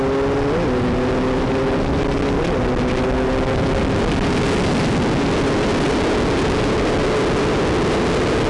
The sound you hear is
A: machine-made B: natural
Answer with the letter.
B